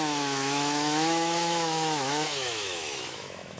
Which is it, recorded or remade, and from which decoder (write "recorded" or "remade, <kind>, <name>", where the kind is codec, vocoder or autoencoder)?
remade, autoencoder, DAC-VAE